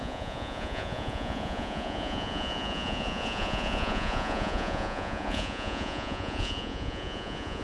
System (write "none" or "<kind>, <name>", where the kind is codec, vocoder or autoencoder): vocoder, Vocos